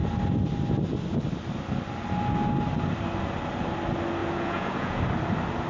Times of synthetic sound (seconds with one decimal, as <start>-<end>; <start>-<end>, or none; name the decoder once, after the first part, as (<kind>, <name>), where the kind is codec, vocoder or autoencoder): 4.2-5.0 (vocoder, Vocos)